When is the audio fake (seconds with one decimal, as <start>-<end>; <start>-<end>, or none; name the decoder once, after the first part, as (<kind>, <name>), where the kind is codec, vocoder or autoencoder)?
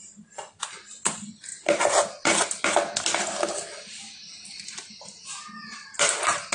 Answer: none